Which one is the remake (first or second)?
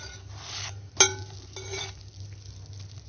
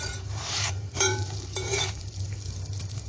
second